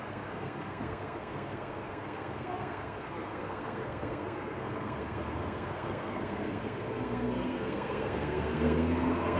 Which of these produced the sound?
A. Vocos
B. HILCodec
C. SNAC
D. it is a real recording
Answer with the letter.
C